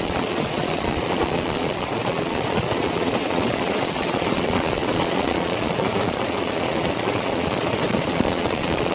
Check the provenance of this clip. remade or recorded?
remade